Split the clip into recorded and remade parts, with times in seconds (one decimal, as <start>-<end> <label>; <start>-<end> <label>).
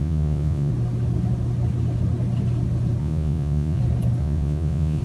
0.0-0.7 remade; 0.7-3.0 recorded; 3.0-3.8 remade; 3.8-4.2 recorded; 4.2-5.0 remade